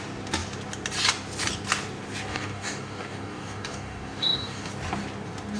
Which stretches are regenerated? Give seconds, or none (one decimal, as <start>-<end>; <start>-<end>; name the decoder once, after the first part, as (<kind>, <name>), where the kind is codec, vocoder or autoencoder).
2.3-4.7 (codec, DAC)